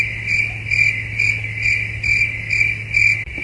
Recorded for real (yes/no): yes